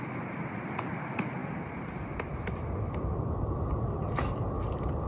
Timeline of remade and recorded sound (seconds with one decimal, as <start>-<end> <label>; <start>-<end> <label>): 0.0-5.1 recorded